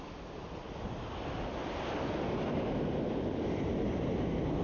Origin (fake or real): real